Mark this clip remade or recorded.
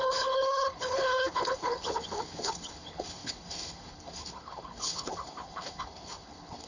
remade